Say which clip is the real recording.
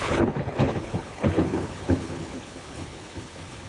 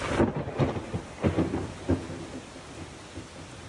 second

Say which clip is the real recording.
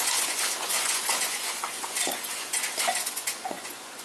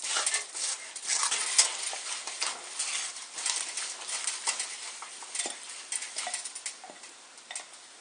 second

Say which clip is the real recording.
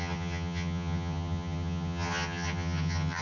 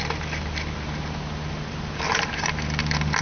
second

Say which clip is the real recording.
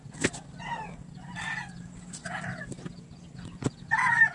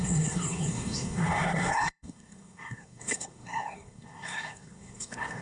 first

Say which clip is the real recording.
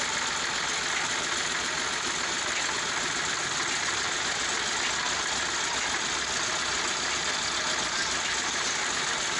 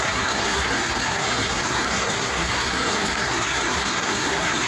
first